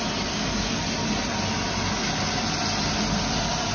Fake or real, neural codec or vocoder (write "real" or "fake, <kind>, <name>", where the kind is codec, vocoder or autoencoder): real